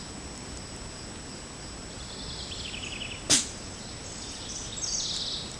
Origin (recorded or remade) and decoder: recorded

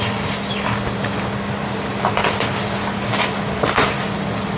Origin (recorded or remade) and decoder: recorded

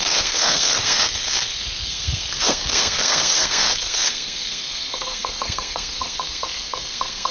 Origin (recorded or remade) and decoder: remade, codec, SNAC